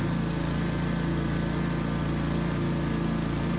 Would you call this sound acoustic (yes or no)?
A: yes